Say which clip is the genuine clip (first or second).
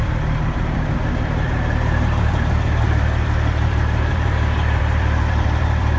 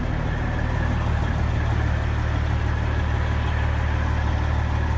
second